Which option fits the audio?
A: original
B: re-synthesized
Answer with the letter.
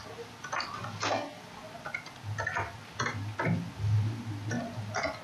A